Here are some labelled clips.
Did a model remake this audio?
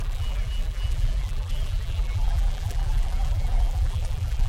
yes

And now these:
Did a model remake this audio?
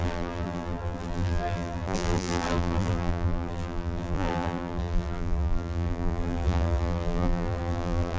yes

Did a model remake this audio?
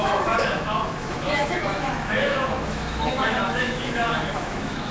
yes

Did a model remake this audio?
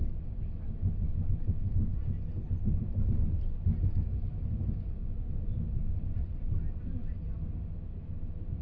no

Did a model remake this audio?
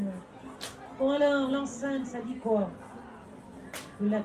no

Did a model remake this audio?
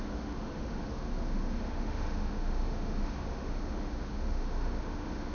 yes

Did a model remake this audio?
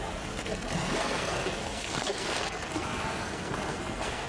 yes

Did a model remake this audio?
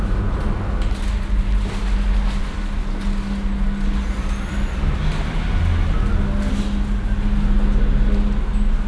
no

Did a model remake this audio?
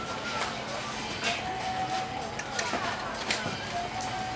no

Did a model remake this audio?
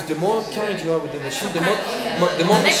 yes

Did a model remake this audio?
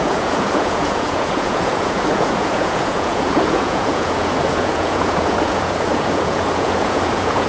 yes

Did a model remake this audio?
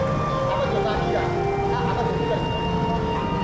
no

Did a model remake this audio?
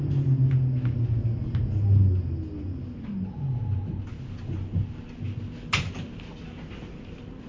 no